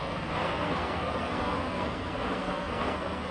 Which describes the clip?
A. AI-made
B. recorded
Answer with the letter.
A